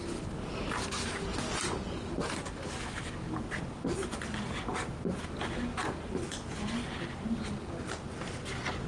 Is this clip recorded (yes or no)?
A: yes